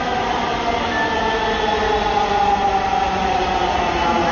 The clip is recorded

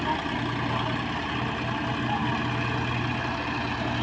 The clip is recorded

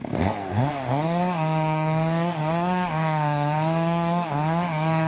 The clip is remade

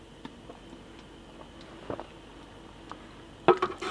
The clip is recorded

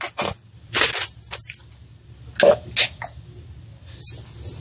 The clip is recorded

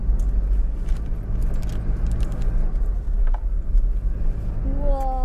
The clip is recorded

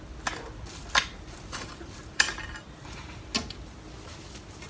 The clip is recorded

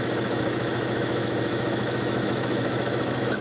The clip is remade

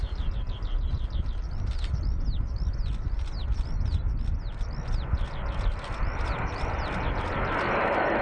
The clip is recorded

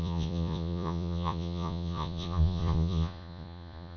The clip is remade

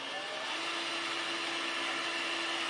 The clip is recorded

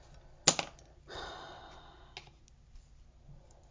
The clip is recorded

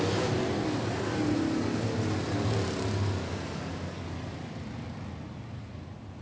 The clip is recorded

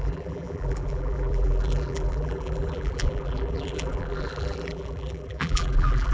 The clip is remade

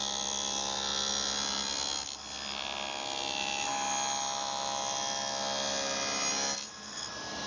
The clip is recorded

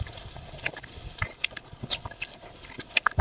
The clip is recorded